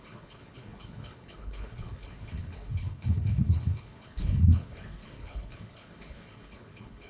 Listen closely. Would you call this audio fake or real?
fake